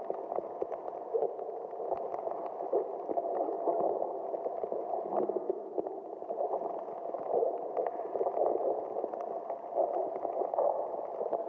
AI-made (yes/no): no